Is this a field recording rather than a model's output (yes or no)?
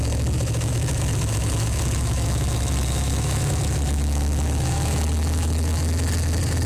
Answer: no